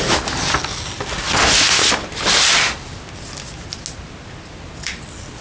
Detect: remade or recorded recorded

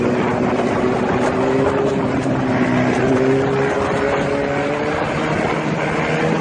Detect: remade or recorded recorded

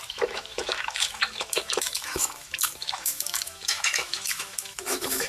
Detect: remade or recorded remade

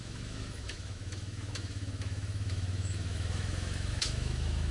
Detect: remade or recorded remade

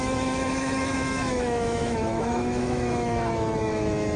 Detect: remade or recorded remade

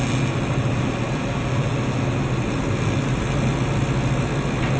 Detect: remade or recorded recorded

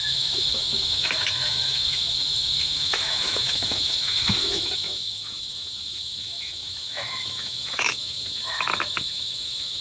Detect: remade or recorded remade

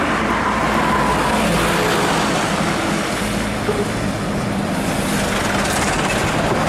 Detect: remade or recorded recorded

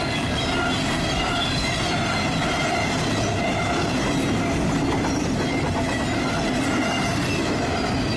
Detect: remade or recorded recorded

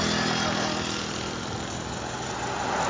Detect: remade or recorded recorded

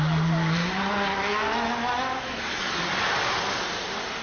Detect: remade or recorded recorded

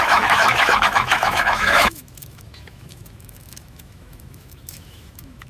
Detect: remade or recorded remade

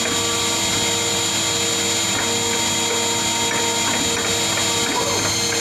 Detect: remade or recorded recorded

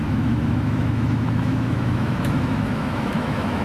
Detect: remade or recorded remade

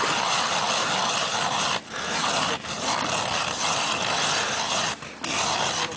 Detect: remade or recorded recorded